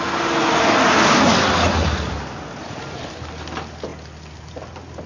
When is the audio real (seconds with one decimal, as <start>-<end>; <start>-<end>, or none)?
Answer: 0.0-5.1

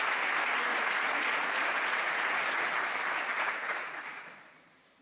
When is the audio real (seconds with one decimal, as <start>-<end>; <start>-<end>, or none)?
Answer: 0.0-0.7; 2.7-3.3; 4.6-5.0

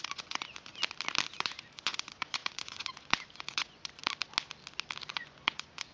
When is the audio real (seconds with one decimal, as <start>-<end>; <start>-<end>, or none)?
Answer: 0.8-1.3; 4.0-5.1

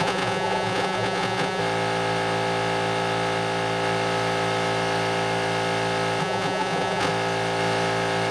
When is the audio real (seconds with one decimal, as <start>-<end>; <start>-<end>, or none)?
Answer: 1.6-6.2; 7.1-8.3

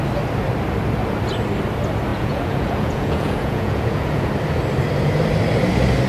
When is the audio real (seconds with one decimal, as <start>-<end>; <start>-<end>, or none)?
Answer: 0.0-2.1; 4.3-6.1

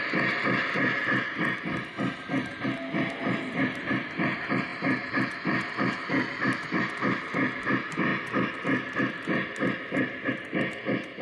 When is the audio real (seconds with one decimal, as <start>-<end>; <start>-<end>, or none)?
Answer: 0.0-11.2

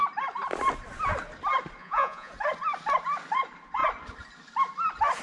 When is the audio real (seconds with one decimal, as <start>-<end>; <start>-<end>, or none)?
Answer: 0.0-1.8; 2.3-5.2

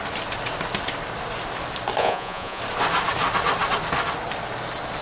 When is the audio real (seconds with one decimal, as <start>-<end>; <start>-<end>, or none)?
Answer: 0.0-2.0; 2.6-5.0